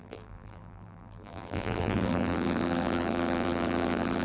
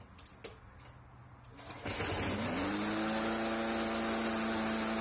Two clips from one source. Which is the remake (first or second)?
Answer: first